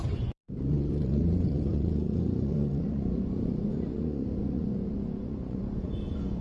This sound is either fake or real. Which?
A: fake